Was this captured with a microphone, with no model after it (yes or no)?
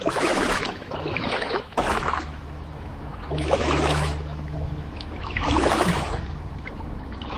no